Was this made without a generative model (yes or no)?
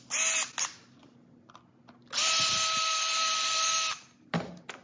yes